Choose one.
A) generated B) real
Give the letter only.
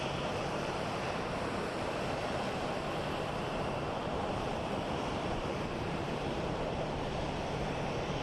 A